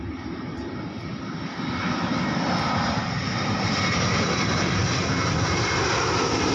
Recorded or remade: remade